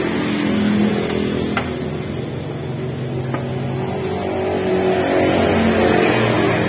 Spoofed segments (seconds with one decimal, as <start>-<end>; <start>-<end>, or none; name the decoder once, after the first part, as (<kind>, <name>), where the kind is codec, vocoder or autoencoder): none